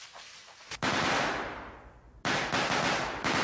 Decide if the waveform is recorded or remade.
recorded